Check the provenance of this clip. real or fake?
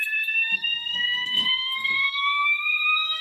fake